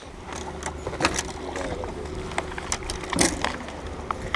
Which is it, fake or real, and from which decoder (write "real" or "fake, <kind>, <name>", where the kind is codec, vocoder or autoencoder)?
real